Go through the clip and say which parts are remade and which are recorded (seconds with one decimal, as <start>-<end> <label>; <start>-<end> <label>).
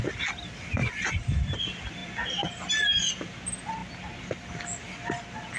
0.0-0.8 recorded; 0.8-1.6 remade; 1.6-5.6 recorded